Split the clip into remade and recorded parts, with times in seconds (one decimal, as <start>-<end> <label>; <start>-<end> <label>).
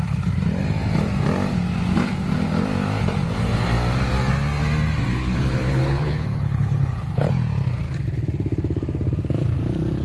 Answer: 0.0-5.1 recorded; 5.1-7.3 remade; 7.3-10.0 recorded